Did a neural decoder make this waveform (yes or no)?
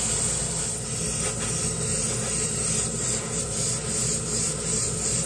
no